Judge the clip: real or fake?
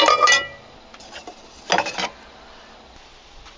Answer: real